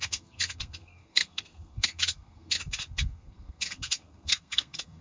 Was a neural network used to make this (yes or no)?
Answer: yes